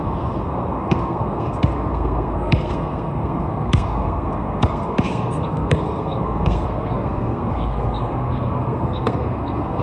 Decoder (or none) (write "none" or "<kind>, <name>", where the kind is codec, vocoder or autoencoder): codec, SNAC